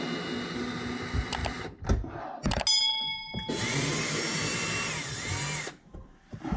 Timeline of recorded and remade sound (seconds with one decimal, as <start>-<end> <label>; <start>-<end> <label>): 0.0-6.6 recorded